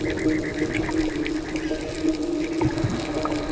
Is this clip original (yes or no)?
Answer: yes